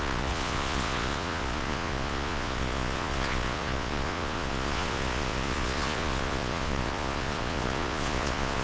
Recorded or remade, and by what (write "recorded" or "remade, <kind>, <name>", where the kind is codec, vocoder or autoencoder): remade, vocoder, Vocos